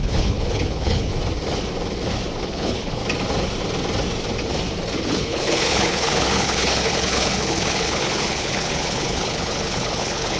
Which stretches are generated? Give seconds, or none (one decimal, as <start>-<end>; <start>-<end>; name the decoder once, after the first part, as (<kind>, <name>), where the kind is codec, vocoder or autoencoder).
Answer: 0.0-1.1 (codec, HILCodec); 2.4-3.0; 5.1-10.4